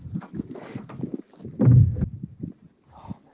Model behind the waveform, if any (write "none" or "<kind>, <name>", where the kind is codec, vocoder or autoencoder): none